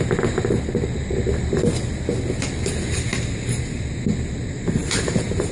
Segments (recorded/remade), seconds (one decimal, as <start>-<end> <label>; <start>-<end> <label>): 0.0-4.8 recorded; 4.8-5.5 remade